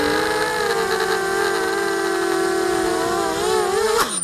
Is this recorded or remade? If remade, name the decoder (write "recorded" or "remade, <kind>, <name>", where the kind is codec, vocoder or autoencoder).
recorded